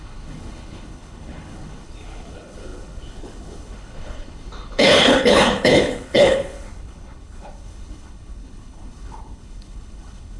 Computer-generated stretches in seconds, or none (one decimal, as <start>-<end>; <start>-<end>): 0.0-10.4